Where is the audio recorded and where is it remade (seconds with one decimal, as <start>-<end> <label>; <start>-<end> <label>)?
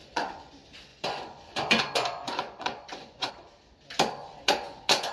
0.0-0.5 remade; 0.5-0.9 recorded; 0.9-3.3 remade; 3.3-4.2 recorded; 4.2-5.1 remade